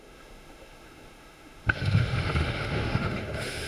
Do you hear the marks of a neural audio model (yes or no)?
yes